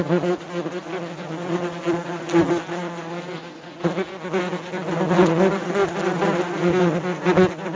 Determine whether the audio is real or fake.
real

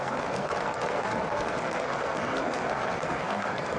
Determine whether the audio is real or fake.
fake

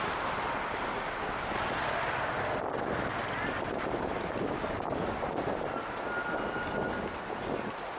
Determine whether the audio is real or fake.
real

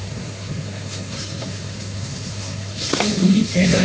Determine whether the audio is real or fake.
fake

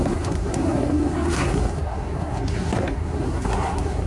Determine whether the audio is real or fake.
fake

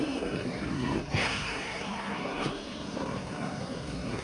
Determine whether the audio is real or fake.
fake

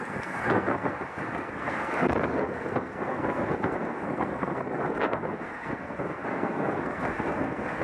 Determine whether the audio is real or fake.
fake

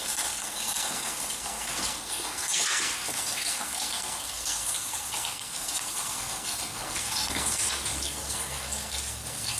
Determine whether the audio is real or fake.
fake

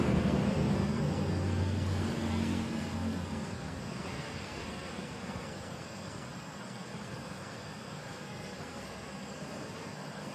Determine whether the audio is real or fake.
fake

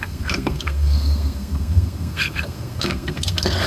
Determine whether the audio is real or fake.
fake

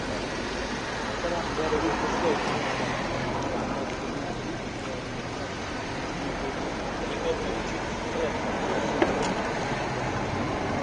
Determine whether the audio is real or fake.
real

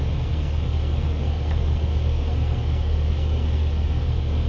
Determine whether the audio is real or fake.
fake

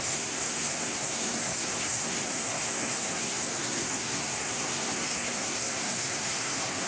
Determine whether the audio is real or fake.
fake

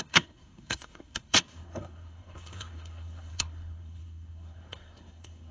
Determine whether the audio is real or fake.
fake